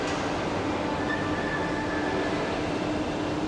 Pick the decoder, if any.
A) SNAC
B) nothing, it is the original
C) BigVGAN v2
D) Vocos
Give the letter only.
B